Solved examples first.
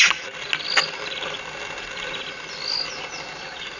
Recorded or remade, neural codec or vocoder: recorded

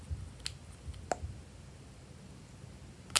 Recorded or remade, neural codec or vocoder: recorded